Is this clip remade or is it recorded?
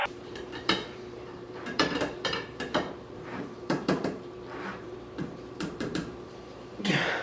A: remade